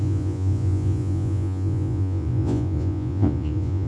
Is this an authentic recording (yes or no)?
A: no